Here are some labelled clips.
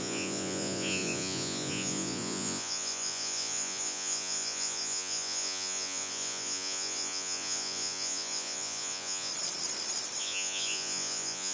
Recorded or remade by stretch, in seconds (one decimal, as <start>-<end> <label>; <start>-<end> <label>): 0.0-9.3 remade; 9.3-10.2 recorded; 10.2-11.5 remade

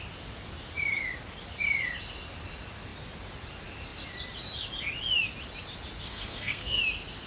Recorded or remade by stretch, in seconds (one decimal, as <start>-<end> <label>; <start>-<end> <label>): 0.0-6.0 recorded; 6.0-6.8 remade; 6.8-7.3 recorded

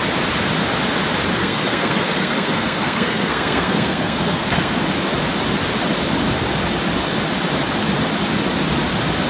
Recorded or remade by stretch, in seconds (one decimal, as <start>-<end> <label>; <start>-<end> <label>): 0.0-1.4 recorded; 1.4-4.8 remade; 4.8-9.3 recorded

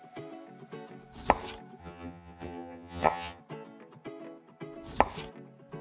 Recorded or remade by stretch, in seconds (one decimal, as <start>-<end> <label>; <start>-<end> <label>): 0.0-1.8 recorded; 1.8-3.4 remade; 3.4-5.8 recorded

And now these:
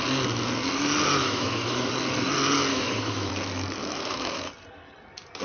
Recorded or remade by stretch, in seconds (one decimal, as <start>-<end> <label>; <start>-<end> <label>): 0.0-1.2 recorded; 1.2-1.9 remade; 1.9-2.7 recorded; 2.7-3.3 remade; 3.3-3.8 recorded; 3.8-4.5 remade; 4.5-5.4 recorded

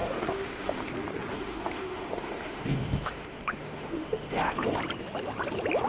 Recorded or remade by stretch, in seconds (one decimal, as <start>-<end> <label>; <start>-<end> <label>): 0.0-0.9 remade; 0.9-1.3 recorded; 1.3-4.8 remade; 4.8-5.9 recorded

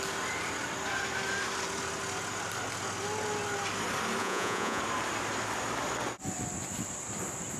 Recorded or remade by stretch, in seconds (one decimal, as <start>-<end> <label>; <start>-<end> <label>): 0.0-4.2 recorded; 4.2-4.8 remade; 4.8-7.6 recorded

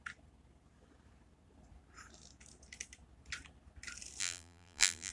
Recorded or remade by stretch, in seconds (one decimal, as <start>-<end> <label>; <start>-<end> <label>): 0.0-4.2 recorded; 4.2-5.1 remade